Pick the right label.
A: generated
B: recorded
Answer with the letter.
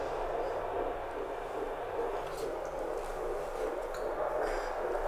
B